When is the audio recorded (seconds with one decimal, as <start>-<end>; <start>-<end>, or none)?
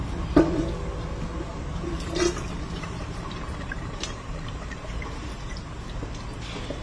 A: 0.0-1.5; 5.6-6.8